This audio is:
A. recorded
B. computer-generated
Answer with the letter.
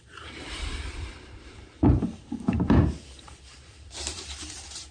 B